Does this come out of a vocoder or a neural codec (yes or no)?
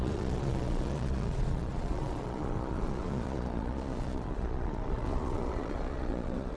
yes